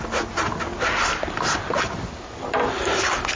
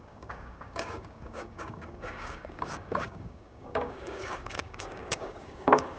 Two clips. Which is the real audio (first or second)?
first